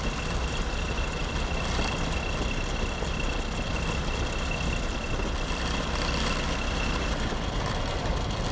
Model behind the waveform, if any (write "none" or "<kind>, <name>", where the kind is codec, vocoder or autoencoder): none